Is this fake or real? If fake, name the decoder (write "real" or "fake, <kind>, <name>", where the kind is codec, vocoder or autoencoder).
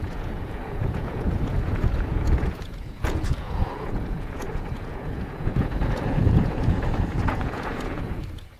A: fake, vocoder, Vocos